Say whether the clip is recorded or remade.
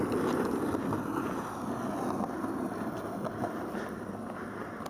recorded